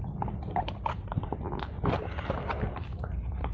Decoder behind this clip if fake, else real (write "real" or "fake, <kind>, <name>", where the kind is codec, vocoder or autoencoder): real